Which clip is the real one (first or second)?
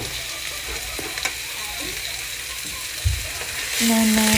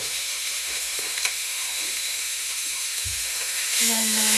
first